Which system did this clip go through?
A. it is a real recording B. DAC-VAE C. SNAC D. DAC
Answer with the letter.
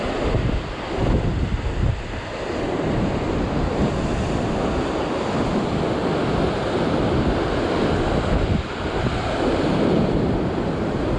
A